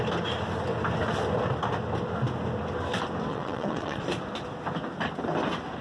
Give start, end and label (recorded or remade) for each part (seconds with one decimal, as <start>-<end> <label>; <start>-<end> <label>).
0.0-3.3 recorded; 3.3-4.0 remade; 4.0-5.8 recorded

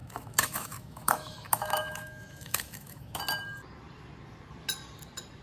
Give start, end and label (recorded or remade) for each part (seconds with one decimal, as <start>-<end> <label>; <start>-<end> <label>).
0.0-3.2 remade; 3.2-5.4 recorded

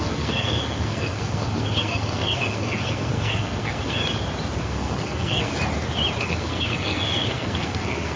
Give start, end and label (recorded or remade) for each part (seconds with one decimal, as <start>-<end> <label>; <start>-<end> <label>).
0.0-4.0 remade; 4.0-4.6 recorded; 4.6-5.5 remade; 5.5-6.2 recorded; 6.2-8.2 remade

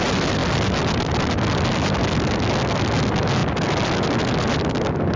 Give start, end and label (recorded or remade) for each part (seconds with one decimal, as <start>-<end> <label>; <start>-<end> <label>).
0.0-5.2 recorded

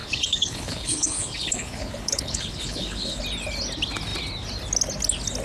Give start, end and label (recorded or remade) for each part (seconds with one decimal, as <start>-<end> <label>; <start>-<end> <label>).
0.0-3.2 remade; 3.2-5.4 recorded

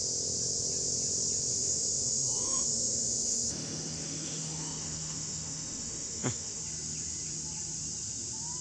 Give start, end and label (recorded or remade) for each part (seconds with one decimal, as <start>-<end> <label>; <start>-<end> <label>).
0.0-1.5 recorded; 1.5-6.6 remade; 6.6-8.6 recorded

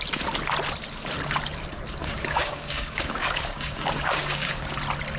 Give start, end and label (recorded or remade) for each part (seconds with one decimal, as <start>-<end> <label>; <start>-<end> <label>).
0.0-2.0 recorded; 2.0-4.6 remade; 4.6-5.2 recorded

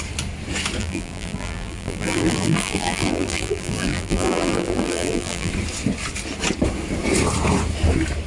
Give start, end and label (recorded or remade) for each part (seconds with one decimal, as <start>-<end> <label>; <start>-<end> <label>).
0.0-0.8 recorded; 0.8-5.5 remade; 5.5-8.3 recorded